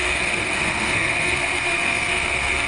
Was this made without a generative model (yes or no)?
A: no